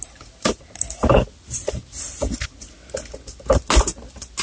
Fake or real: real